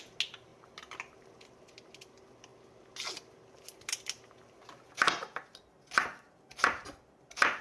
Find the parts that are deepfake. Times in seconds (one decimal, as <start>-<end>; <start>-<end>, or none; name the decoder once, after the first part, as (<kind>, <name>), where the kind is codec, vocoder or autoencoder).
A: none